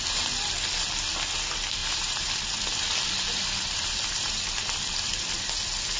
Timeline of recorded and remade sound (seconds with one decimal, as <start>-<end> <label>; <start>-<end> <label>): 0.0-1.8 recorded; 1.8-5.4 remade; 5.4-6.0 recorded